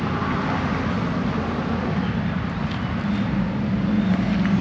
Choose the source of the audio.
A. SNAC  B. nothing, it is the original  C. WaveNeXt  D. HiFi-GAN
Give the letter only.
B